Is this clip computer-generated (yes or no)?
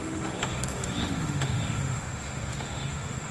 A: yes